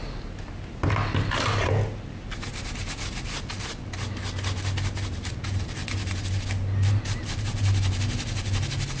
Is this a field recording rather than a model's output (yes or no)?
yes